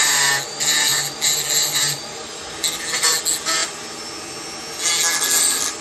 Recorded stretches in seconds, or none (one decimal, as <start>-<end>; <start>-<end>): 0.0-5.8